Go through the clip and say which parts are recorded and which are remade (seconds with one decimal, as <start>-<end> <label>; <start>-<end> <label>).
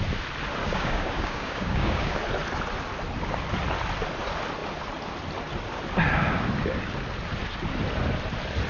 0.0-0.6 recorded; 0.6-2.2 remade; 2.2-8.7 recorded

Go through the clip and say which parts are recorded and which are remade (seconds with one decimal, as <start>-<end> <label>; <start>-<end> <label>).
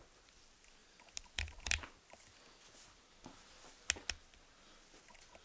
0.0-5.4 recorded